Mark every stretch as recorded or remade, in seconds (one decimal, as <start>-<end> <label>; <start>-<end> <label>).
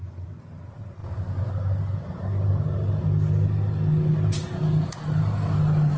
0.0-6.0 recorded